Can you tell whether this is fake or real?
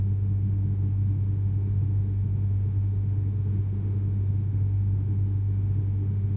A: fake